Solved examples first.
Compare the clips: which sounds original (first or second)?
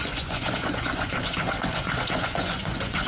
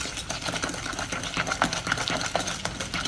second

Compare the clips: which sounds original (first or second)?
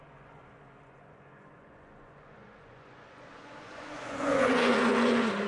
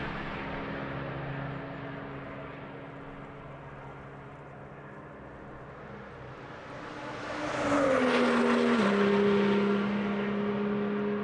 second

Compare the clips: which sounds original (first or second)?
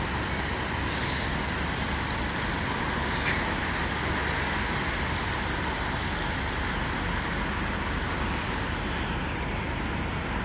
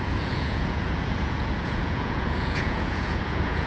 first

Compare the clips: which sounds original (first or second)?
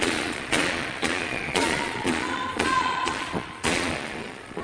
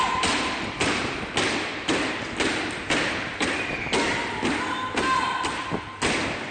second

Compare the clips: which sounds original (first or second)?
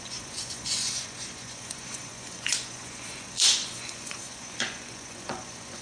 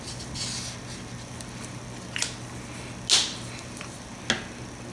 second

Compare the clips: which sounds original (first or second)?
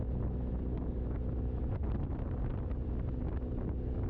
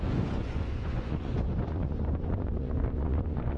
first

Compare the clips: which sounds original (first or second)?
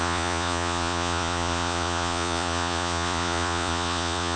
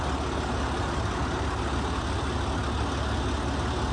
second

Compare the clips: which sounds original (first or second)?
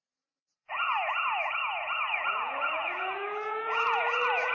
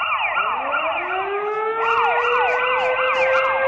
second